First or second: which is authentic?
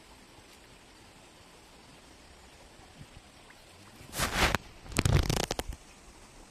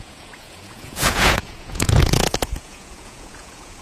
first